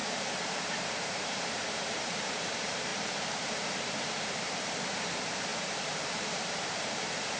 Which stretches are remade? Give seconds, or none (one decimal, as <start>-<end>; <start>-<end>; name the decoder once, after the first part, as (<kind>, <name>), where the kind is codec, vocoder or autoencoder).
0.0-7.4 (vocoder, BigVGAN v2)